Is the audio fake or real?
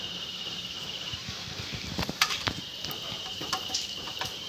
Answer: fake